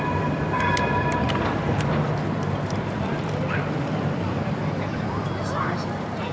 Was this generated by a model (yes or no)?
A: yes